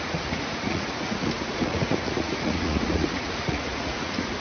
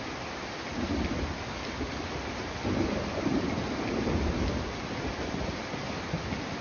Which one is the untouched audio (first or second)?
second